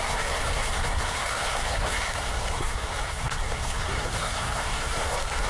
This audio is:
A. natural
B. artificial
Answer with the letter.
B